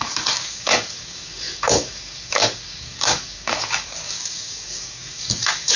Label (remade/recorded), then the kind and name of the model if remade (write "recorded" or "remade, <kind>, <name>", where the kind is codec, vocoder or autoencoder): remade, codec, DAC